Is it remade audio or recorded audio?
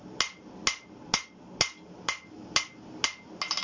recorded